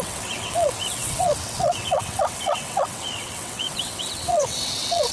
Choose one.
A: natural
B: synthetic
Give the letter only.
B